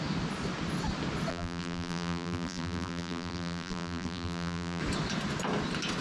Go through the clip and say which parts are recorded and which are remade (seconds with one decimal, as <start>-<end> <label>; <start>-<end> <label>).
0.0-1.3 recorded; 1.3-4.8 remade; 4.8-6.0 recorded